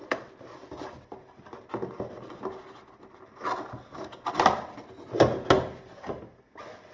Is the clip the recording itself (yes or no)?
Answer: yes